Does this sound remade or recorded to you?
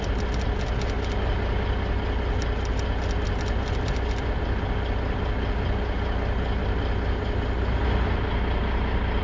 recorded